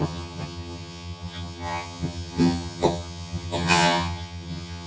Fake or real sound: fake